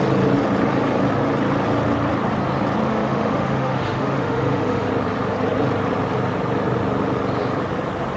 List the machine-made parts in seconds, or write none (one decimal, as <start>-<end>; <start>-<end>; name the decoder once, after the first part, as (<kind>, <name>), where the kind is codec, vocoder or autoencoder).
2.9-4.9 (autoencoder, DAC-VAE)